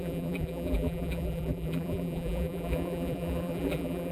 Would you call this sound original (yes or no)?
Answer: no